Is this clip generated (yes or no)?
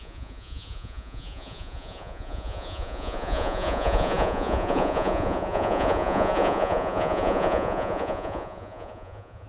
yes